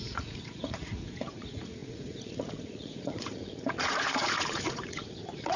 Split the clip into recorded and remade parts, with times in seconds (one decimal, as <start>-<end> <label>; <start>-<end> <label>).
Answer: 0.0-5.6 remade